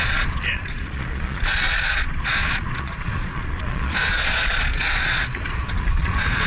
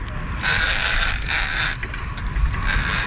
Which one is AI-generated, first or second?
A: first